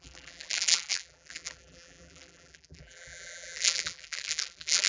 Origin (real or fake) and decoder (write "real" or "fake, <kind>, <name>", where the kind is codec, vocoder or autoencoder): fake, vocoder, BigVGAN v2